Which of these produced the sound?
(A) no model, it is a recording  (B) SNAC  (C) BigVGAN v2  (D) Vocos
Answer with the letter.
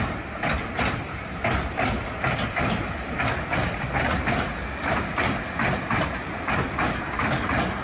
A